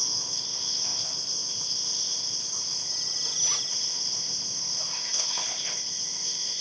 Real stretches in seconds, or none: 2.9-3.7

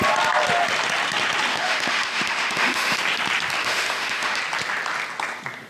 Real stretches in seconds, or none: 0.0-1.5; 3.0-3.6; 4.4-5.7